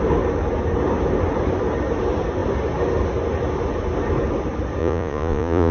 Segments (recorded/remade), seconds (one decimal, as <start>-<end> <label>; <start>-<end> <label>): 0.0-4.8 recorded; 4.8-5.7 remade